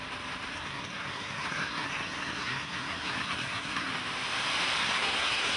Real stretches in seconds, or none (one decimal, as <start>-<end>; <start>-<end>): 0.0-0.5; 3.9-4.8